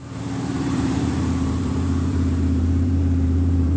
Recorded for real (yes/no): no